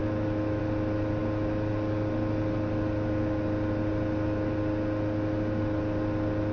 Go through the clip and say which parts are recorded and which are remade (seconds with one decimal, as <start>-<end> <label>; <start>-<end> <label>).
0.0-0.6 remade; 0.6-6.5 recorded